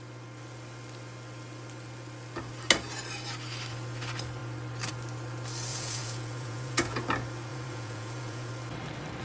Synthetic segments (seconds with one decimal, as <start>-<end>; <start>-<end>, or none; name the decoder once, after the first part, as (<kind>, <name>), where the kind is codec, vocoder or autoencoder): 5.7-7.0 (vocoder, Vocos); 7.5-8.5